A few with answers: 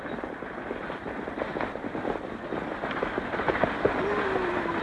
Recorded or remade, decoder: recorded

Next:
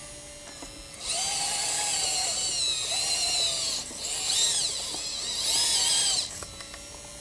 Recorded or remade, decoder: recorded